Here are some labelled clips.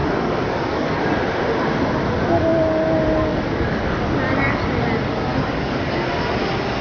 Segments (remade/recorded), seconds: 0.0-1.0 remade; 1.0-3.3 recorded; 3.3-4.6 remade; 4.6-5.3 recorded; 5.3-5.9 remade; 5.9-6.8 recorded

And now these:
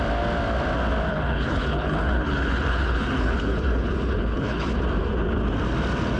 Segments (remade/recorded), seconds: 0.0-1.1 recorded; 1.1-4.8 remade; 4.8-6.2 recorded

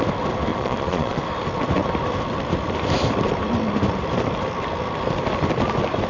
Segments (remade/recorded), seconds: 0.0-0.5 recorded; 0.5-1.2 remade; 1.2-6.1 recorded

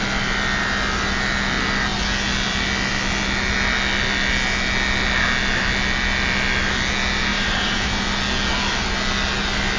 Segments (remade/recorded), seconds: 0.0-7.3 recorded; 7.3-8.0 remade; 8.0-9.8 recorded

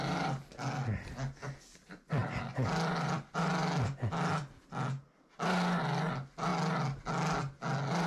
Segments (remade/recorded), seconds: 0.0-8.1 recorded

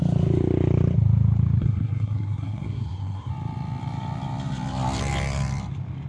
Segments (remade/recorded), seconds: 0.0-1.6 recorded; 1.6-3.3 remade; 3.3-6.1 recorded

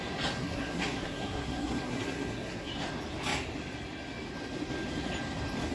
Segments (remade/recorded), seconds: 0.0-0.4 recorded; 0.4-2.7 remade; 2.7-5.7 recorded